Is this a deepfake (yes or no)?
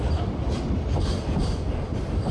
yes